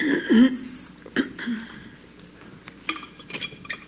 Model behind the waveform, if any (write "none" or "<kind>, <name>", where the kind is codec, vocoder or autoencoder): none